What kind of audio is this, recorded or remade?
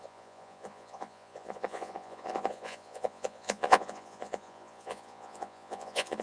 remade